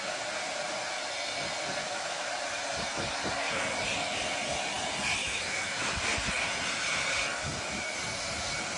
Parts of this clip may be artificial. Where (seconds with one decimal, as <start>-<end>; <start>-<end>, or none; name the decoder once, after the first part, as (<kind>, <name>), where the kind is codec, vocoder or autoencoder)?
1.8-2.3 (autoencoder, DAC-VAE); 5.2-6.0